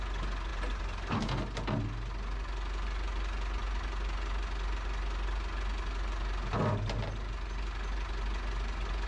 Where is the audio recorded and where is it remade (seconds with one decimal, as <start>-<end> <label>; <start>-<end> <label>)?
0.0-9.1 recorded